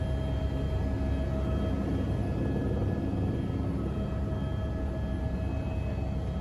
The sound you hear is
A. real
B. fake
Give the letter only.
A